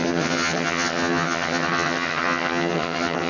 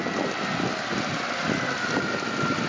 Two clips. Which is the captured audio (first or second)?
second